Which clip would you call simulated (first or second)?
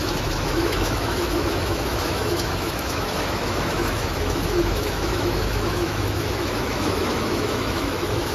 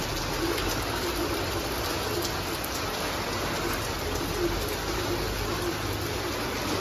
first